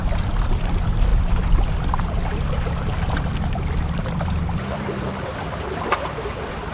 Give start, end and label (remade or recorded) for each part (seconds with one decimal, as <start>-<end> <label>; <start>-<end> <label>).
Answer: 0.0-6.7 remade

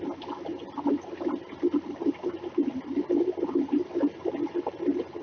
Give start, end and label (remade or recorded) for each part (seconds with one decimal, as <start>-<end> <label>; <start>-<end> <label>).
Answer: 0.0-5.2 recorded

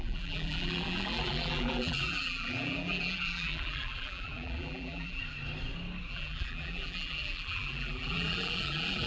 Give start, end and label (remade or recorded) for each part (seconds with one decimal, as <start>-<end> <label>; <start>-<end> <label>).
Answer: 0.0-5.2 remade; 5.2-6.1 recorded; 6.1-9.1 remade

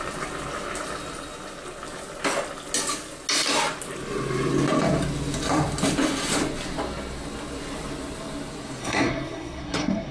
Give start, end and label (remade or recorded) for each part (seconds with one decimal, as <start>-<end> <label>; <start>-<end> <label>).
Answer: 0.0-8.8 recorded; 8.8-10.1 remade

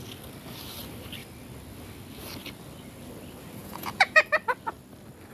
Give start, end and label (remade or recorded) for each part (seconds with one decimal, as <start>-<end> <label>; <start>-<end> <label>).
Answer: 0.0-3.6 recorded; 3.6-4.2 remade; 4.2-5.3 recorded